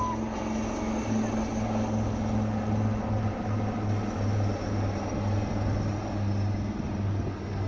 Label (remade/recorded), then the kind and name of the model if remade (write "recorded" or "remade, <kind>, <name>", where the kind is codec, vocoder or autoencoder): recorded